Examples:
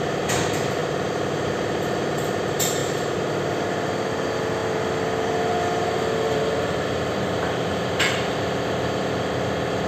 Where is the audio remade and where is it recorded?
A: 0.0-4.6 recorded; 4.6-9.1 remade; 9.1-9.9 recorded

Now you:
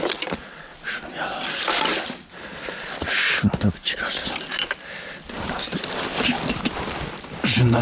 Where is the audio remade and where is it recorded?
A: 0.0-7.8 recorded

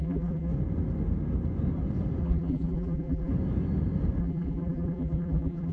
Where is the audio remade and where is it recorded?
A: 0.0-0.5 remade; 0.5-2.2 recorded; 2.2-3.3 remade; 3.3-4.2 recorded; 4.2-5.7 remade

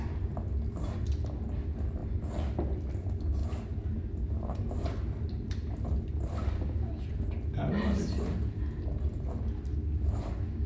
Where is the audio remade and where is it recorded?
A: 0.0-3.4 recorded; 3.4-7.3 remade; 7.3-10.7 recorded

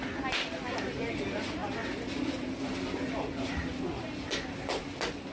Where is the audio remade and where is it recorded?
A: 0.0-5.3 recorded